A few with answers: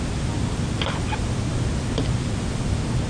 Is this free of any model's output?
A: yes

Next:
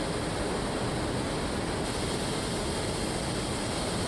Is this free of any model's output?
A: yes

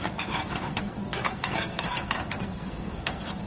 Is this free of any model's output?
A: no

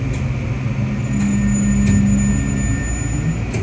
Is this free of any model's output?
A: yes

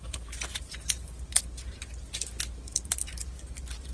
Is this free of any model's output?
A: yes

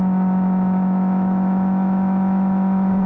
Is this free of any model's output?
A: no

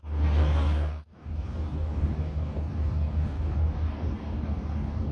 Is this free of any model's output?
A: no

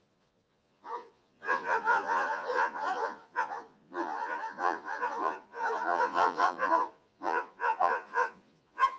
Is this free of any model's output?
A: no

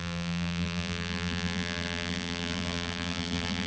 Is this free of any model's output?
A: no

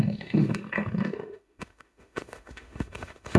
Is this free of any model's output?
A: no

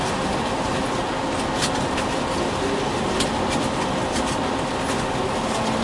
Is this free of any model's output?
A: yes